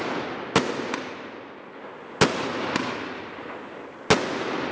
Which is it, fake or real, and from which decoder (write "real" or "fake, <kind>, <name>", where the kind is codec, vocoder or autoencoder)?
real